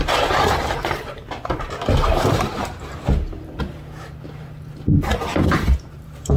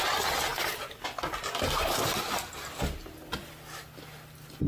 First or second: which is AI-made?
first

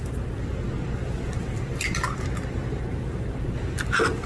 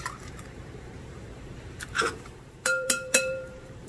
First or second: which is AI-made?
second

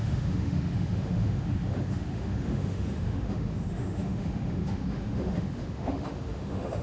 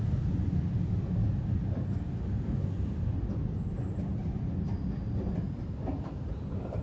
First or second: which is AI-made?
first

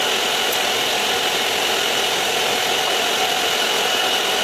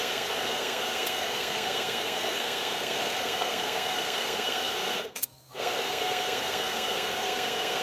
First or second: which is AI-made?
second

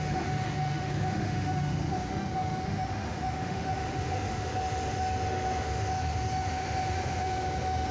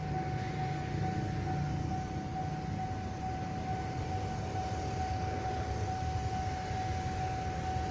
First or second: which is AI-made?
first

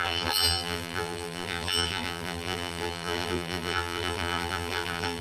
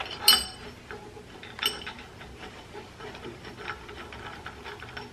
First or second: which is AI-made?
first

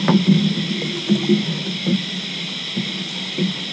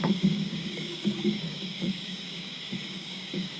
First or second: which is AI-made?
second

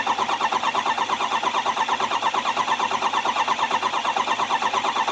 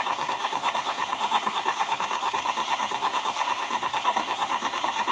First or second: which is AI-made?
second